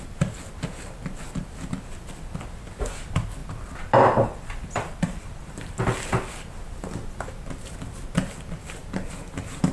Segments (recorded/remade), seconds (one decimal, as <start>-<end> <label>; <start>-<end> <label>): 0.0-3.4 recorded; 3.4-5.8 remade; 5.8-9.7 recorded